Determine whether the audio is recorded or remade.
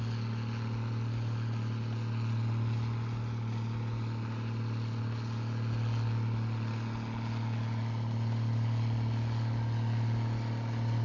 recorded